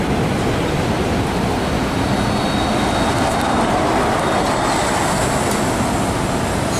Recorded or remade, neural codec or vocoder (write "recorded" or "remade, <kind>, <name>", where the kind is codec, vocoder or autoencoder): recorded